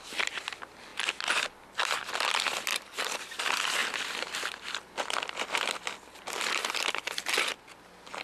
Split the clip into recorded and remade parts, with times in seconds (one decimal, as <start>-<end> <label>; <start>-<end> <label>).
0.0-2.7 recorded; 2.7-3.4 remade; 3.4-8.2 recorded